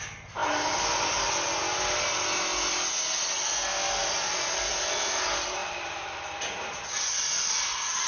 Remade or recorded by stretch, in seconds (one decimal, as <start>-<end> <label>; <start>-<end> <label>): 0.0-8.1 recorded